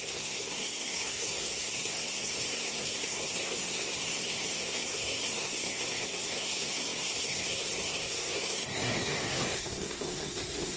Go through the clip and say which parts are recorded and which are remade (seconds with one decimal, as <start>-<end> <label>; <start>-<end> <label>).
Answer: 0.0-10.8 remade